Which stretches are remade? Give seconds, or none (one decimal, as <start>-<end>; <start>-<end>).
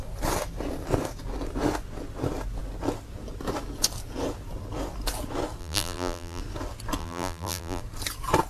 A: 5.6-6.4; 7.0-7.8